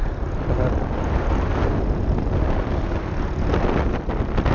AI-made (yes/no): no